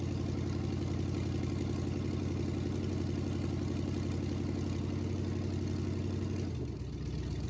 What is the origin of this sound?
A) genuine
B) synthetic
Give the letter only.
A